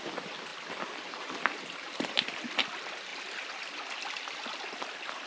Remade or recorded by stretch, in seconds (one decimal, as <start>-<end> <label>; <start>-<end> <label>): 0.0-5.3 recorded